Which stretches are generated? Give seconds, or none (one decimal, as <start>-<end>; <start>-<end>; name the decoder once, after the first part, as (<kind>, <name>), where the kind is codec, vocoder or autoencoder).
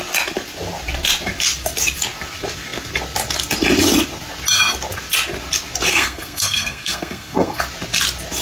5.9-7.6 (codec, SNAC)